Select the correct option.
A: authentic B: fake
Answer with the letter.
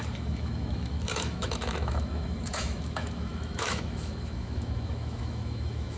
B